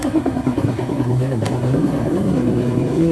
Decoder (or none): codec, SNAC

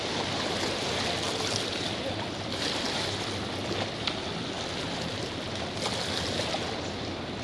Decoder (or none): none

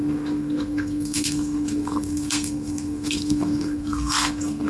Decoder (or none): codec, SNAC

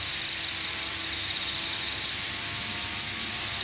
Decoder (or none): none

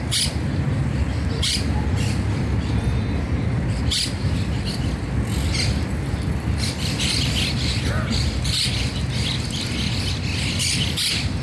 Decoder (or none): none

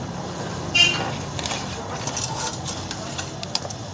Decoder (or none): none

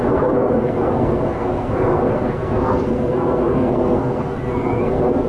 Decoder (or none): codec, SNAC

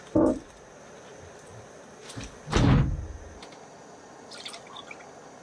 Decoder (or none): none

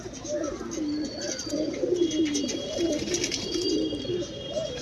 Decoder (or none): none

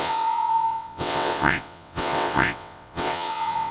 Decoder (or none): vocoder, WaveNeXt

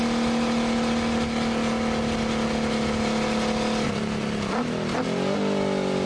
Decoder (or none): none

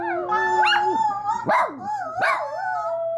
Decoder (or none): none